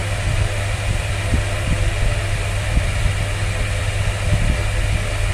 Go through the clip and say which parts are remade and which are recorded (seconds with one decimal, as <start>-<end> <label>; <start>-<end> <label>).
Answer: 0.0-3.0 remade; 3.0-5.3 recorded